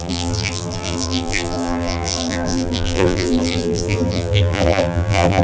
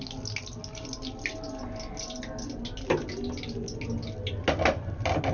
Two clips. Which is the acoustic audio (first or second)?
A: second